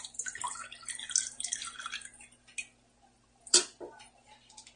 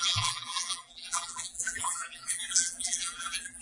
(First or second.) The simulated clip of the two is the second